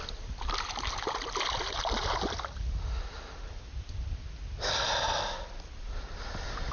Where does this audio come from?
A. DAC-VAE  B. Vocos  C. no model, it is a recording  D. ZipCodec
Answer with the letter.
C